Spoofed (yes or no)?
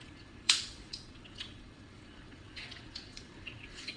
yes